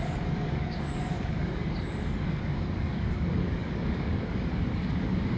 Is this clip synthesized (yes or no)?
yes